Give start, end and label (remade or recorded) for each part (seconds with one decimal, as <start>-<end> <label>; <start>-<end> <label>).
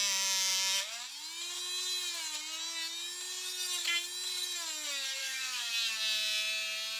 0.0-5.2 recorded; 5.2-5.7 remade; 5.7-7.0 recorded